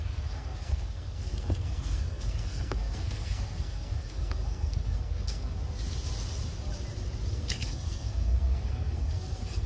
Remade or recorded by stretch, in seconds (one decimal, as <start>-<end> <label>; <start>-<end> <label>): 0.0-5.6 remade; 5.6-7.3 recorded; 7.3-9.7 remade